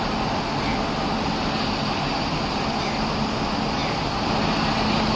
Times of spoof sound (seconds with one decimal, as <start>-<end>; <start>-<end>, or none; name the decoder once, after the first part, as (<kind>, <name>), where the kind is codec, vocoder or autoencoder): none